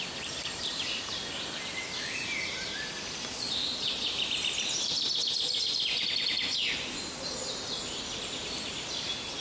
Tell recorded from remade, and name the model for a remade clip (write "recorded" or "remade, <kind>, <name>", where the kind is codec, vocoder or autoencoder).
recorded